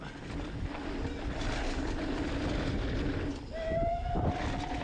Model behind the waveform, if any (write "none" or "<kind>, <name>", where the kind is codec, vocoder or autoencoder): none